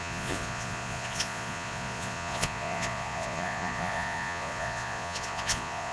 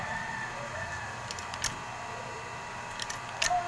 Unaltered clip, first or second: second